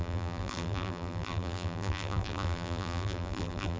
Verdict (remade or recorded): remade